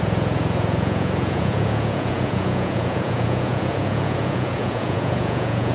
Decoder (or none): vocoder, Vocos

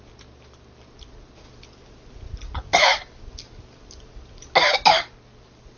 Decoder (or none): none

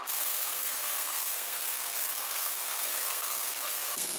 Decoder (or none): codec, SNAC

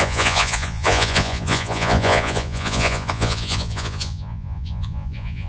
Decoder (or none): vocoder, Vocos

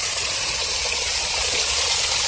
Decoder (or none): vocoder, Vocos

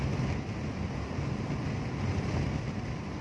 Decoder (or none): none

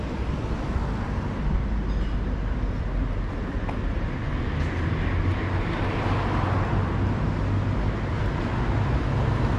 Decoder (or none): none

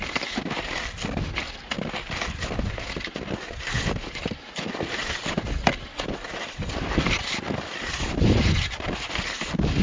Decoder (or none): none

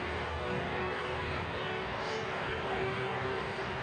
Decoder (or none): codec, DAC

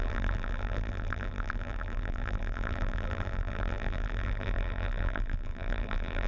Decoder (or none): vocoder, BigVGAN v2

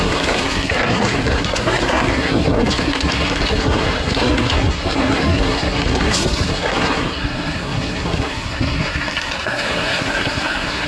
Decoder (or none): codec, SNAC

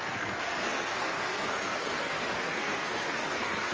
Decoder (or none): codec, SNAC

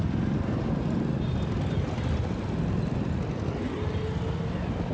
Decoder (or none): none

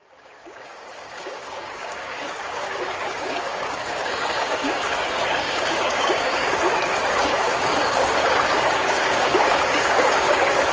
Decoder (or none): codec, DAC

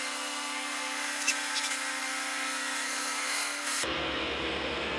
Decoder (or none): codec, SNAC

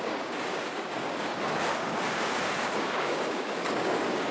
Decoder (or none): codec, DAC